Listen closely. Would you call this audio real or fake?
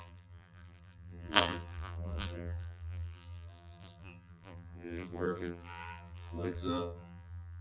fake